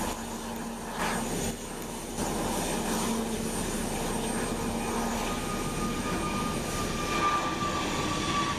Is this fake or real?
real